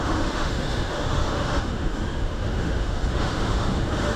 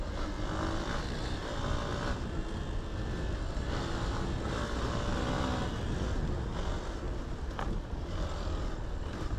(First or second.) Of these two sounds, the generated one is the first